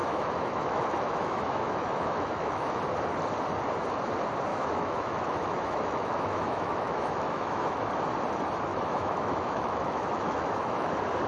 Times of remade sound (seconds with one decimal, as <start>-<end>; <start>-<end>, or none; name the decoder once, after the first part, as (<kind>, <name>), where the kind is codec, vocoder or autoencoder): 0.0-2.8 (autoencoder, DAC-VAE); 4.5-7.9; 8.7-10.9